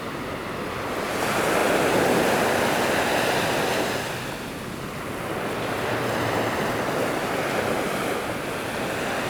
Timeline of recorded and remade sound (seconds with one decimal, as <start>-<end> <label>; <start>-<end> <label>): 0.0-9.3 recorded